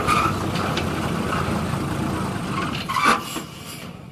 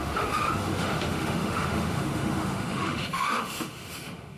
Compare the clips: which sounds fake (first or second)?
second